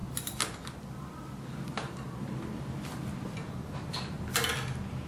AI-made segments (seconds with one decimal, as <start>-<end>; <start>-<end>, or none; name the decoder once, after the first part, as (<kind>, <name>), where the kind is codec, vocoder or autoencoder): none